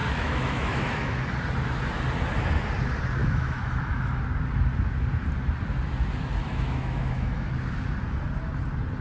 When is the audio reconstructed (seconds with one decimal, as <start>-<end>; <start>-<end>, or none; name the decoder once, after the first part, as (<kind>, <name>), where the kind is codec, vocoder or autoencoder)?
0.0-1.2 (autoencoder, DAC-VAE); 3.2-4.2; 6.4-7.5